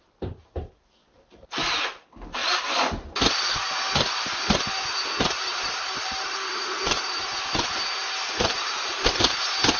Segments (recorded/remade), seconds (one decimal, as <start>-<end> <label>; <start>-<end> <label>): 0.0-1.0 recorded; 1.0-1.8 remade; 1.8-5.5 recorded; 5.5-8.6 remade; 8.6-9.8 recorded